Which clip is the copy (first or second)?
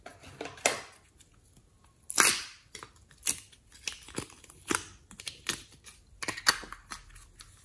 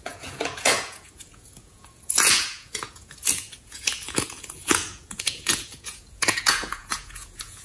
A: second